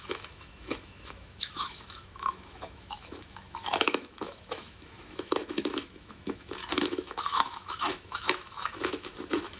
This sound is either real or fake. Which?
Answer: fake